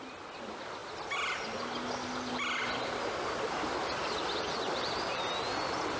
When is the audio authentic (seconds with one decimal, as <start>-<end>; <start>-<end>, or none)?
0.0-6.0